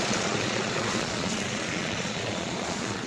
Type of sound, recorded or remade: remade